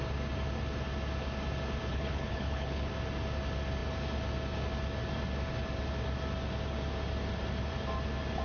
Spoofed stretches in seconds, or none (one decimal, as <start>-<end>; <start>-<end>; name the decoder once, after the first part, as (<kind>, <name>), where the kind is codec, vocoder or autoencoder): 1.9-2.9 (codec, HILCodec)